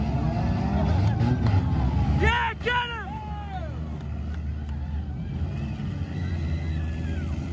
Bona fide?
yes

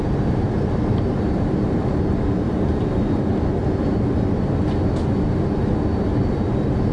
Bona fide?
yes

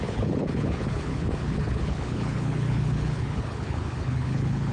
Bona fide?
no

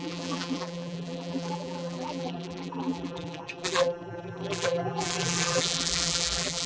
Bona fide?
no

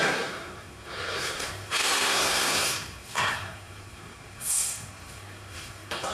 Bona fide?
no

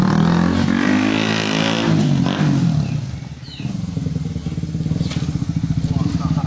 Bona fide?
yes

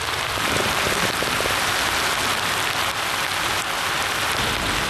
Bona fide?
yes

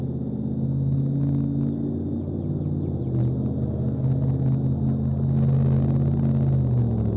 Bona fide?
yes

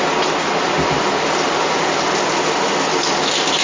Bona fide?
yes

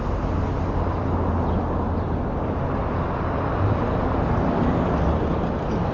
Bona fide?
yes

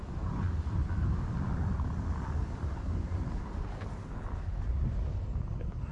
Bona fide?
yes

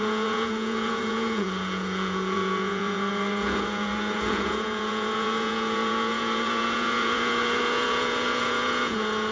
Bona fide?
no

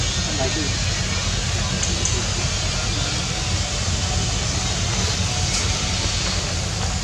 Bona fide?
yes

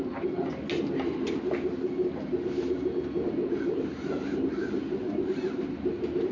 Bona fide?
yes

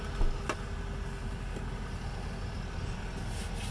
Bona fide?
yes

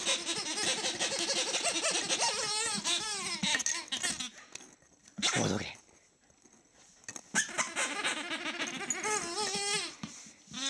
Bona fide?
yes